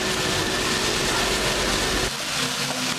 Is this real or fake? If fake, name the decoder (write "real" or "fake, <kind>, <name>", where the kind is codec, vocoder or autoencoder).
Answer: real